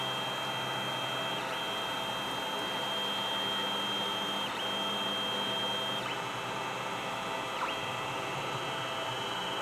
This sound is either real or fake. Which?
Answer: real